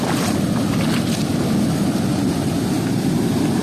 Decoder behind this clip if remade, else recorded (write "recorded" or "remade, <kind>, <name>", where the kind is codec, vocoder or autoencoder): recorded